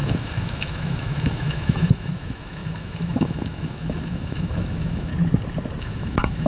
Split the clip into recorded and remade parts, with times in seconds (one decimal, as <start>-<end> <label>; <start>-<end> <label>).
0.0-5.1 remade; 5.1-5.8 recorded; 5.8-6.5 remade

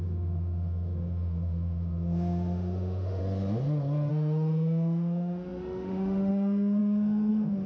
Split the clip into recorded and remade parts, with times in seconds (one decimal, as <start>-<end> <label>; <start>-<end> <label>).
0.0-3.2 remade; 3.2-4.1 recorded; 4.1-7.7 remade